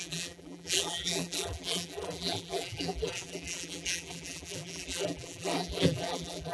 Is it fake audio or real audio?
fake